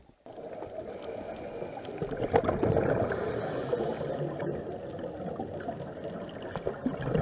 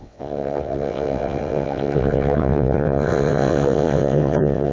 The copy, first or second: second